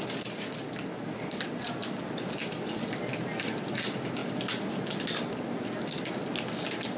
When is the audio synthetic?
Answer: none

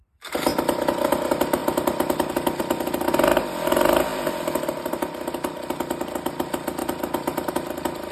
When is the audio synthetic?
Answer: 0.5-1.1; 1.6-2.6; 4.1-4.9; 6.8-7.5

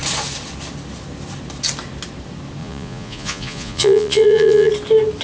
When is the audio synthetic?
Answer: 2.6-4.7

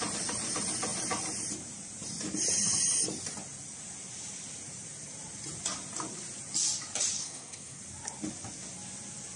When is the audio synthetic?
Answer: 7.2-7.8

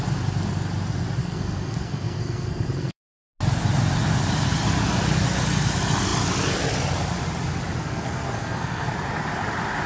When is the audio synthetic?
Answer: 1.2-3.1; 7.8-8.9

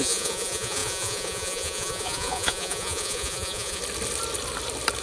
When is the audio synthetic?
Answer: 0.0-3.8

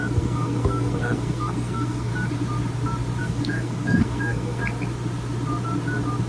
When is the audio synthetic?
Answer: 0.0-2.1; 3.2-4.6

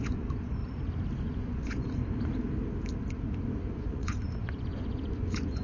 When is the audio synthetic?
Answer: 0.0-0.6; 1.2-2.0; 3.7-5.6